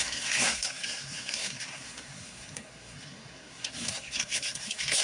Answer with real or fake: fake